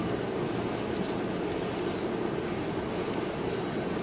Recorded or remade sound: recorded